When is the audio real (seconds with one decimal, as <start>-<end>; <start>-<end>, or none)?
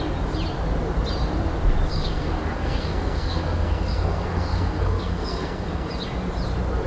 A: 0.0-1.9; 5.9-6.9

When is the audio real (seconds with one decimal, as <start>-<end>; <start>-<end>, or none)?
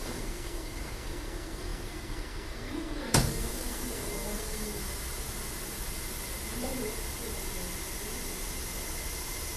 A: 4.8-9.6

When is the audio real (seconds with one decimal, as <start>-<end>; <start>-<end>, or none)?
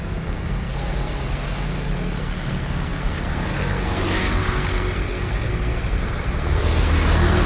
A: none